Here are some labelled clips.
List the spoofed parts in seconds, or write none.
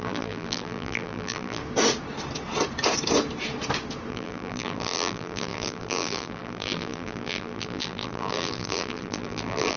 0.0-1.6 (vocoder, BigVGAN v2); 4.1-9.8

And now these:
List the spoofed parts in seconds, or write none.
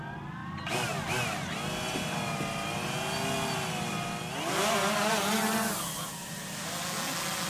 6.2-6.7 (vocoder, BigVGAN v2)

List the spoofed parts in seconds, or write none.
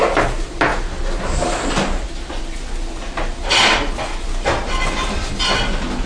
none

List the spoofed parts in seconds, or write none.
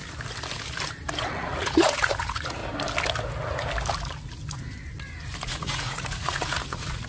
1.2-2.6 (vocoder, Vocos); 5.4-7.1